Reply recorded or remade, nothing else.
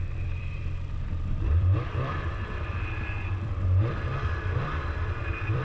remade